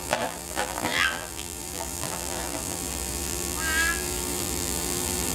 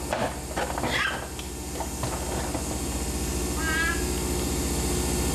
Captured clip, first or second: second